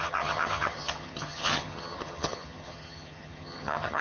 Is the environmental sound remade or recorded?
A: remade